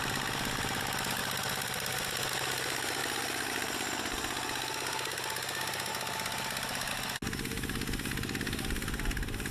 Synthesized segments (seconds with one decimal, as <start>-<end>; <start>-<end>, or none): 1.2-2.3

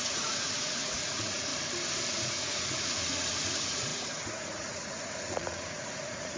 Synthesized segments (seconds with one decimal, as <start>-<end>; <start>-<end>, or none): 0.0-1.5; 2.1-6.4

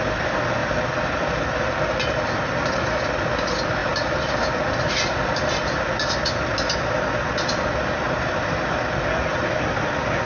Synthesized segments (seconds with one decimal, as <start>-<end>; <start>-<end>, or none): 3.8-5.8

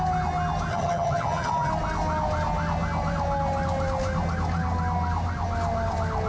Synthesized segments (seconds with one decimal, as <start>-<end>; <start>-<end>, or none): 0.7-1.7